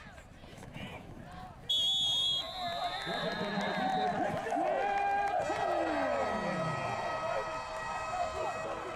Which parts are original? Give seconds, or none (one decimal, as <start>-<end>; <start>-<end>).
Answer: 0.0-0.5; 1.2-9.0

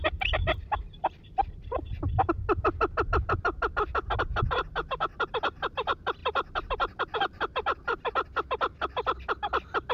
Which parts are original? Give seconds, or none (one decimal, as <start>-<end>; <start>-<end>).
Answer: 0.0-0.4; 1.9-4.8; 5.4-9.9